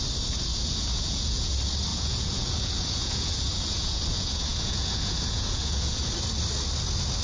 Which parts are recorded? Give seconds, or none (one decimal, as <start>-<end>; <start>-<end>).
0.0-0.5; 1.5-1.9; 6.1-7.2